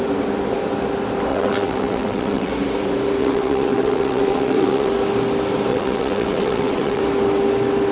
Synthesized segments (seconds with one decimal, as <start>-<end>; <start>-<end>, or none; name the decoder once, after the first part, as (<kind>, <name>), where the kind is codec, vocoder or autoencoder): 1.3-2.5 (vocoder, WaveNeXt); 3.2-4.9; 5.7-7.0